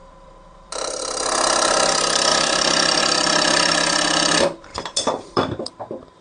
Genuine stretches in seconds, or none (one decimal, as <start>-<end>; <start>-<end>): 1.0-4.7; 5.8-6.2